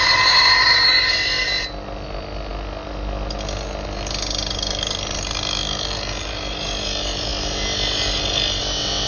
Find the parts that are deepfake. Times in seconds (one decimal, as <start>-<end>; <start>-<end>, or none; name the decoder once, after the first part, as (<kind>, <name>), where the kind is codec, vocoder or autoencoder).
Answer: none